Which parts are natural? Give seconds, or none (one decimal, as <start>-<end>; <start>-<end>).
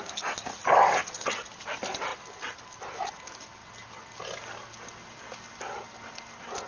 0.0-6.7